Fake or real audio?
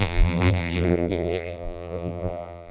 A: fake